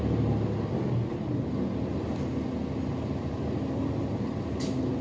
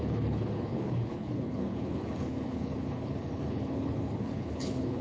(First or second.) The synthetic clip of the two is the second